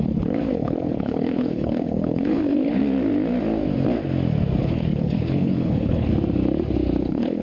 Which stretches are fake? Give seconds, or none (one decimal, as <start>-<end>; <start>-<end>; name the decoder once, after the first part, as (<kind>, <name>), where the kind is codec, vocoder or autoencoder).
0.0-2.8 (codec, HILCodec); 4.6-6.1; 7.0-7.4